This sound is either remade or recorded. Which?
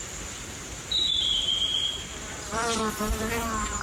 remade